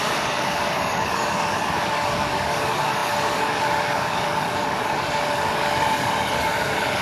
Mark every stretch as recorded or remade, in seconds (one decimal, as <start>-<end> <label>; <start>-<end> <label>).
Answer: 0.0-7.0 remade